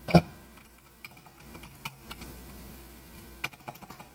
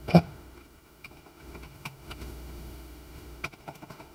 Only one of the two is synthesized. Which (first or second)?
second